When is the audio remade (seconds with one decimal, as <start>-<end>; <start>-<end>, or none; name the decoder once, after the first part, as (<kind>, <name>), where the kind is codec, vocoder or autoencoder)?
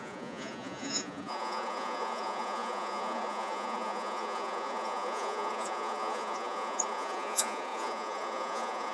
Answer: 0.0-8.9 (vocoder, Vocos)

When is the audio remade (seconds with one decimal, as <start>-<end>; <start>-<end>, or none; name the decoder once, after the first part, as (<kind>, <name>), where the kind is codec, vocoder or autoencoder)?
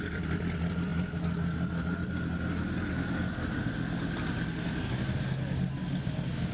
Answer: none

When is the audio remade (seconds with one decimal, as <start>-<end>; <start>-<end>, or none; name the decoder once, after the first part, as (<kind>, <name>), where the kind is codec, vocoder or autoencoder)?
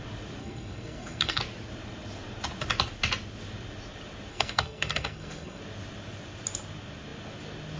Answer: 0.4-1.4 (codec, SNAC); 4.3-5.6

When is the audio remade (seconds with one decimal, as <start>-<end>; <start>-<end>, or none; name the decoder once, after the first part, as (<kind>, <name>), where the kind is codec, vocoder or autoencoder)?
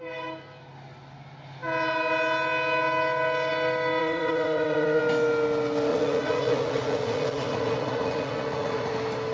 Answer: 4.0-5.0 (vocoder, Vocos); 5.9-8.9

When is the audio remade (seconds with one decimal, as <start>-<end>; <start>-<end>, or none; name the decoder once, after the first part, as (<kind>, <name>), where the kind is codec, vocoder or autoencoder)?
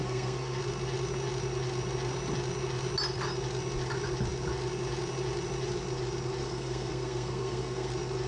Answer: 0.0-0.6 (codec, SNAC); 6.4-7.9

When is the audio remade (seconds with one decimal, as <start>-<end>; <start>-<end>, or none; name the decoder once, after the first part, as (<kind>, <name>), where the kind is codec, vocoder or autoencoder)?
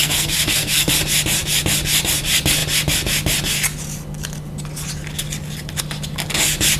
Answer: 0.0-0.9 (codec, SNAC)